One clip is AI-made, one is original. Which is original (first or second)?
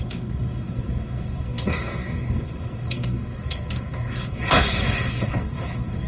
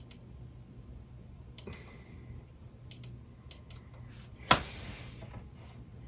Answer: second